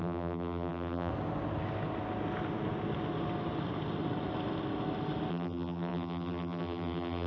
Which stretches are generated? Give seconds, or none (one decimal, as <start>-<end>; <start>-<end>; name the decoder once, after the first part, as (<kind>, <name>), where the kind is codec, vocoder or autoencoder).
0.0-1.1 (vocoder, BigVGAN v2); 5.3-7.3

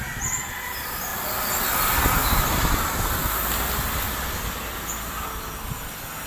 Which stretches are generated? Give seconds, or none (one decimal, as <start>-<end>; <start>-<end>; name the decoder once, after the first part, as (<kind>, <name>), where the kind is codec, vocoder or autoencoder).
1.1-1.6 (vocoder, BigVGAN v2)

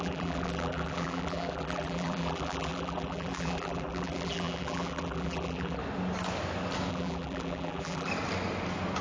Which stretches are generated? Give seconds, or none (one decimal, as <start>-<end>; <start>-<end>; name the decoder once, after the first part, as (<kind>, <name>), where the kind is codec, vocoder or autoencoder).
0.0-5.8 (vocoder, BigVGAN v2); 6.9-8.1

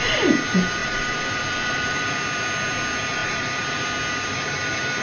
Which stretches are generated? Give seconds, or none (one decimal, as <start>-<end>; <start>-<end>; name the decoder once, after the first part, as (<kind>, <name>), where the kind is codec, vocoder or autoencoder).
0.8-2.1 (vocoder, BigVGAN v2); 3.2-3.8

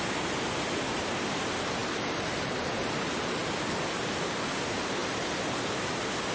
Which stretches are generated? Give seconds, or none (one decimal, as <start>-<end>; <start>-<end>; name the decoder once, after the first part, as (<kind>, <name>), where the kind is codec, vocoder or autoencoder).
0.0-3.4 (vocoder, BigVGAN v2); 3.9-5.0; 5.7-6.3

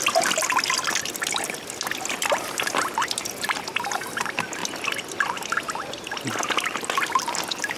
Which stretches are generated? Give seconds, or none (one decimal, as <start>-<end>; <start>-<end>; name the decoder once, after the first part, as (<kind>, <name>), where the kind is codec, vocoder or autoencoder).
none

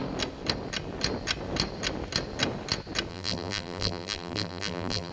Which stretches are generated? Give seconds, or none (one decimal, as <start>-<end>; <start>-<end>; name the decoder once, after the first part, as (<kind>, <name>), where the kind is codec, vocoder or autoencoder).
3.1-5.1 (vocoder, BigVGAN v2)

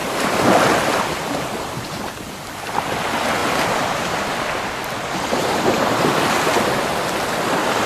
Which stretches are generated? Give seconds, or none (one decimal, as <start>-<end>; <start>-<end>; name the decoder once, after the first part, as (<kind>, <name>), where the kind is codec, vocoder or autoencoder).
0.0-2.7 (vocoder, BigVGAN v2); 3.4-5.9